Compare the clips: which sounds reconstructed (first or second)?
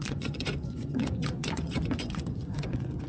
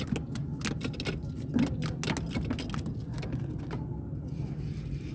first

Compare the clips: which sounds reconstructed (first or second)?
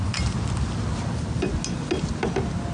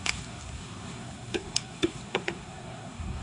second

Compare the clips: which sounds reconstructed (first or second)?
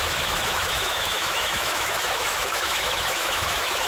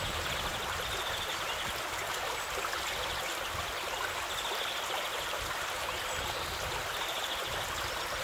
first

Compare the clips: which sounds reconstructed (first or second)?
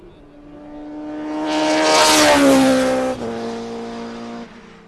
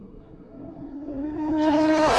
second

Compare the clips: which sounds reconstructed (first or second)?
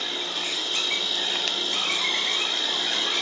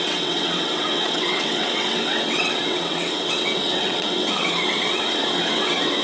second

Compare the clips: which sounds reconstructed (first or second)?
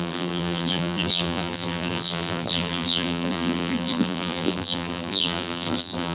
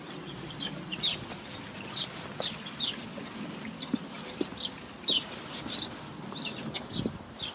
first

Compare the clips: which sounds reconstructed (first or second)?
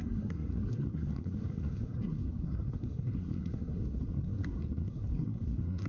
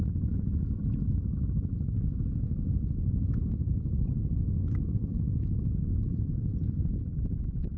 first